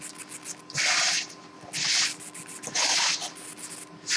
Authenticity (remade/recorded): recorded